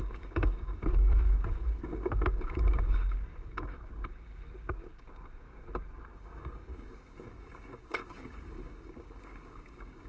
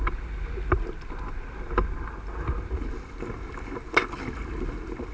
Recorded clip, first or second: second